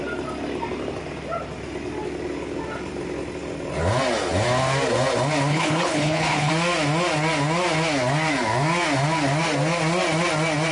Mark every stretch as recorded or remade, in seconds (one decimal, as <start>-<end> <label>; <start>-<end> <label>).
0.0-5.5 recorded; 5.5-6.5 remade; 6.5-10.7 recorded

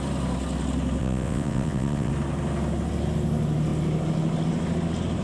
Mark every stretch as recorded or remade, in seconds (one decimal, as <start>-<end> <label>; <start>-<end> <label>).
0.0-1.0 recorded; 1.0-2.1 remade; 2.1-5.2 recorded

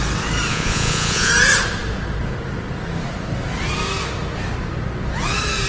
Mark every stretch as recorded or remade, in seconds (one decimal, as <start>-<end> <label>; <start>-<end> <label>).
0.0-0.5 recorded; 0.5-1.3 remade; 1.3-5.7 recorded